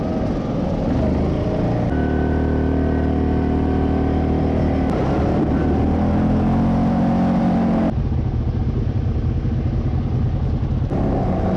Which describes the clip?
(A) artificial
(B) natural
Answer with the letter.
B